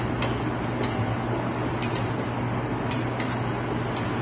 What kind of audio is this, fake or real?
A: real